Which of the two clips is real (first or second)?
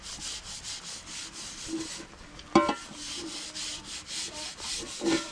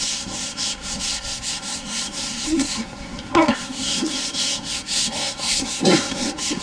first